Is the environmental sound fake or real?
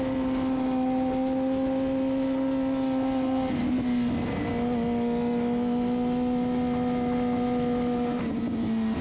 real